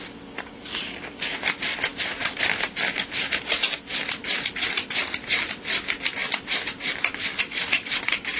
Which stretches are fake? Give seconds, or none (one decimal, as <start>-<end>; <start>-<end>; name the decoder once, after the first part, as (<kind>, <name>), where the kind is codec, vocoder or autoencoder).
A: none